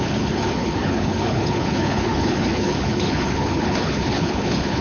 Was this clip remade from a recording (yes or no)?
yes